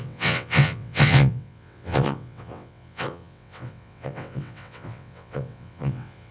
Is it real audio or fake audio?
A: fake